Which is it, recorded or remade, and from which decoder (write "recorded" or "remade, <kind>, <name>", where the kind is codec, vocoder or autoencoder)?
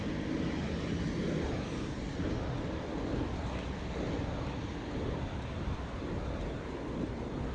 recorded